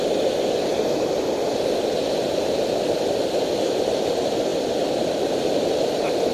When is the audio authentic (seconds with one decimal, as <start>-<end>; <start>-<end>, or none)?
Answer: 0.0-6.3